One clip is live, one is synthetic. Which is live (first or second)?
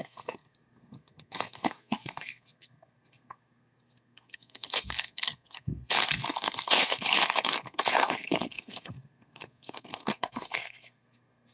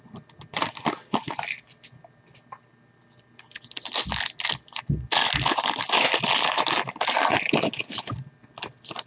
second